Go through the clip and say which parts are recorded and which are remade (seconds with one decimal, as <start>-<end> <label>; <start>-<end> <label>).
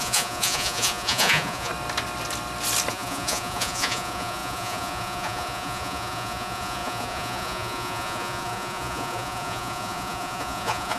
0.0-1.7 remade; 1.7-2.9 recorded; 2.9-11.0 remade